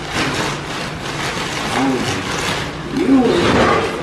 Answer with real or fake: real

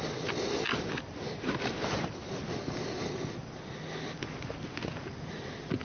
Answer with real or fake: real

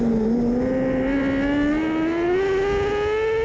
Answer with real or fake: real